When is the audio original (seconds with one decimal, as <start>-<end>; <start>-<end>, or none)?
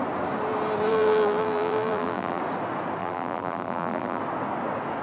0.0-0.9; 2.4-3.0; 4.2-5.0